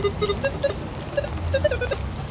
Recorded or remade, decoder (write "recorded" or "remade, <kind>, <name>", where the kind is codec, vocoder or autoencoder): recorded